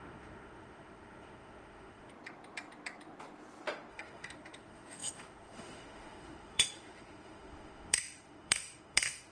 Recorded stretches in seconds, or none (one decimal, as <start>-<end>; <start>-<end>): 2.1-3.9